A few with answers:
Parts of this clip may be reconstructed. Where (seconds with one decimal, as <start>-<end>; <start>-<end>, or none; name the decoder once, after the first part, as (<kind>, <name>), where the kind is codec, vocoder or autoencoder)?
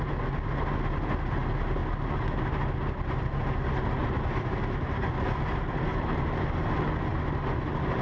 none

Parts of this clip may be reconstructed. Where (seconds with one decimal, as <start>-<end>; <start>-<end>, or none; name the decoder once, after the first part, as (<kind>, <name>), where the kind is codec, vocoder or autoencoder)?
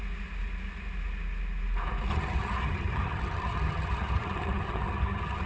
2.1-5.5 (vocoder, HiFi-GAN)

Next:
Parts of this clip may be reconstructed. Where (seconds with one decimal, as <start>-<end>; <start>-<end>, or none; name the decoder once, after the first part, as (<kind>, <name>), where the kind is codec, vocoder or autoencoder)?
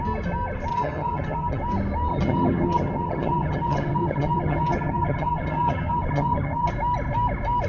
0.7-1.6 (vocoder, HiFi-GAN); 2.1-6.7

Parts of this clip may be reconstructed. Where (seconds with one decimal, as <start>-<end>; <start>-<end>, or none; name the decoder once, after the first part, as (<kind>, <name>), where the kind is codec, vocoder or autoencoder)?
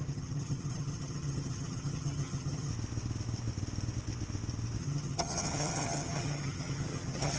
0.0-2.7 (vocoder, HiFi-GAN); 4.8-7.4